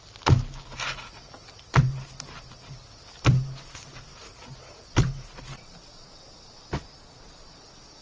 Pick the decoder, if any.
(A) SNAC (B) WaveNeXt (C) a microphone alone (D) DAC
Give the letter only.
C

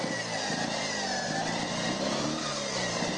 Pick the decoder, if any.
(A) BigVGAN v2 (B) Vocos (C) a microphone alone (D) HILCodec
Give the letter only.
C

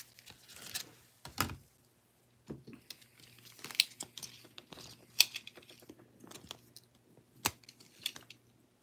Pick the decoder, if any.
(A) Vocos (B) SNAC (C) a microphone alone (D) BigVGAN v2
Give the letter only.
C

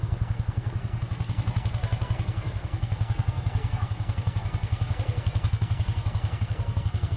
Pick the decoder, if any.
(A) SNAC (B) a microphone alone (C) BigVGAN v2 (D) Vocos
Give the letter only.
A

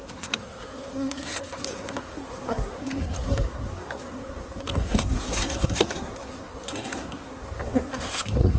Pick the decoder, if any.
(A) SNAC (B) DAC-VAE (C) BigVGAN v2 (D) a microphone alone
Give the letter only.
A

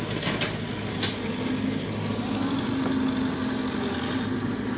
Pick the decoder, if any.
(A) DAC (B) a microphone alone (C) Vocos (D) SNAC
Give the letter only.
B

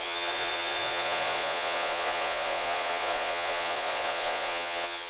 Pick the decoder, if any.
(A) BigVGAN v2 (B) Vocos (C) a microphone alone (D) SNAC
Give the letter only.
B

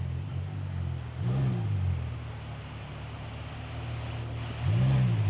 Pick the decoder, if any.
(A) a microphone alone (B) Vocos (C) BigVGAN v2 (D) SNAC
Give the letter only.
A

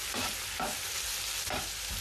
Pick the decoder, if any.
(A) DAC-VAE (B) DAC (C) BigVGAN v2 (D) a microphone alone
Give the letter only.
D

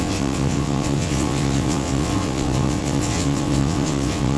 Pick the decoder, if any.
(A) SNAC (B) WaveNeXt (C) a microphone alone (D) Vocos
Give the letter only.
B